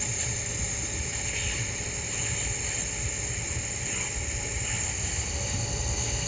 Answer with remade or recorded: recorded